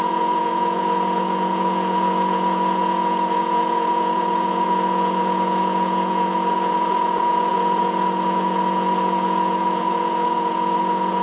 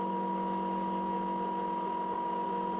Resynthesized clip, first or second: first